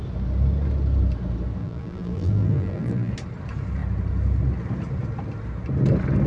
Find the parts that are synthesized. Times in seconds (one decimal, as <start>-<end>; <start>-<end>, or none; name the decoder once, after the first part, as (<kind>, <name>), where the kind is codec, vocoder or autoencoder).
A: 1.6-3.1 (vocoder, BigVGAN v2)